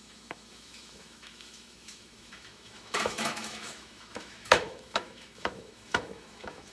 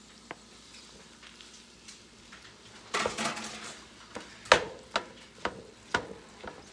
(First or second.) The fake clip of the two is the first